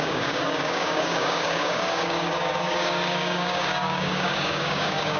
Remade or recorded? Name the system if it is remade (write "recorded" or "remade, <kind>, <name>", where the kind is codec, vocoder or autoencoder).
remade, codec, DAC